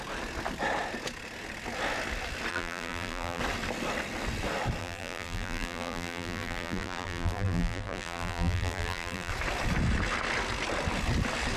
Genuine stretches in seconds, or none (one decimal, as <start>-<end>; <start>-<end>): 0.0-2.5; 3.4-4.8; 9.3-11.6